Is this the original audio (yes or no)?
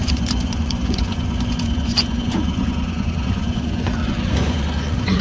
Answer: no